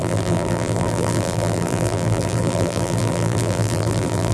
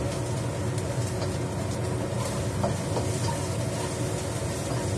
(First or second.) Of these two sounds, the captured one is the second